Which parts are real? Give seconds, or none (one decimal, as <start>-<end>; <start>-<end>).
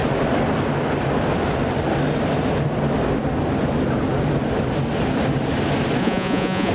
0.0-6.0